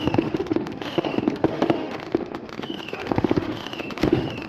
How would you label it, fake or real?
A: fake